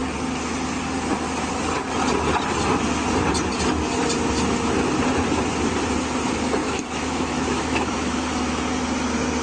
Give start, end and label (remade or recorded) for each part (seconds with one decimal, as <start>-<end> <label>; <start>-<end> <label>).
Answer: 0.0-6.6 recorded; 6.6-8.6 remade; 8.6-9.4 recorded